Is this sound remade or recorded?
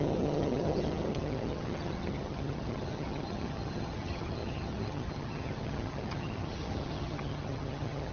remade